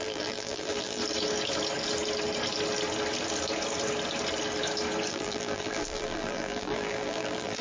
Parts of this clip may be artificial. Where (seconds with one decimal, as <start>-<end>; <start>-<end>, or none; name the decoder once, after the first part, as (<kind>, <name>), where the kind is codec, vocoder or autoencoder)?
0.0-1.0 (vocoder, BigVGAN v2); 5.1-7.6